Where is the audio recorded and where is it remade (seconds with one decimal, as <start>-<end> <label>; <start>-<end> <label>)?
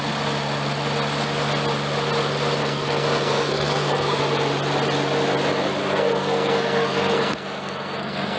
0.0-2.6 recorded; 2.6-4.2 remade; 4.2-5.8 recorded; 5.8-8.4 remade